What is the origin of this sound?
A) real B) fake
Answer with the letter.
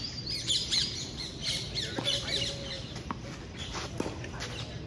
A